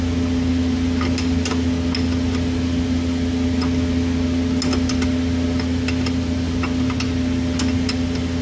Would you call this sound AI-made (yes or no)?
no